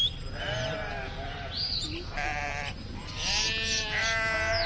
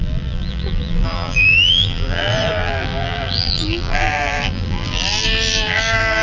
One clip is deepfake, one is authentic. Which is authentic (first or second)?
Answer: first